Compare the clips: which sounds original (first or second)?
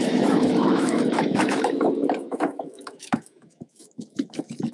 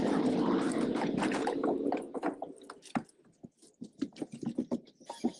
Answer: second